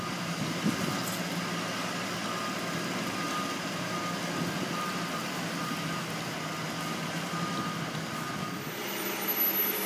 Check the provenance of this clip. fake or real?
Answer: real